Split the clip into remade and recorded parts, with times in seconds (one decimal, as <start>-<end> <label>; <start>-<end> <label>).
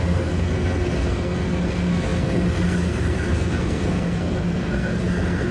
0.0-5.5 remade